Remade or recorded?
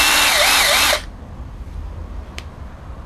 remade